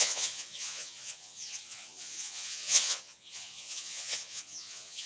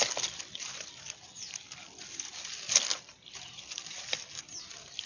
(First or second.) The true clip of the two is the second